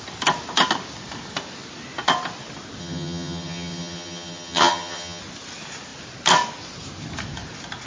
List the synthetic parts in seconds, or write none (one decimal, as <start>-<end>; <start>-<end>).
2.8-5.2